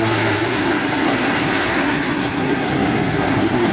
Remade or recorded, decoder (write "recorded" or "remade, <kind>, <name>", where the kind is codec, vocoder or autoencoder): remade, codec, SNAC